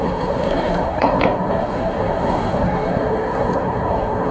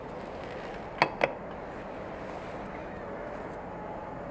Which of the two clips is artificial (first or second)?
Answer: first